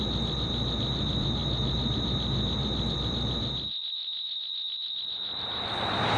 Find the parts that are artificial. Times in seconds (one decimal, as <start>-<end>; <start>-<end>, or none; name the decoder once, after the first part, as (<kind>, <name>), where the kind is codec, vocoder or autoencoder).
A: none